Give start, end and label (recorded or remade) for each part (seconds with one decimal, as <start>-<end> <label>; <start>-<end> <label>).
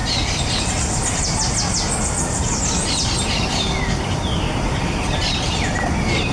0.0-6.3 recorded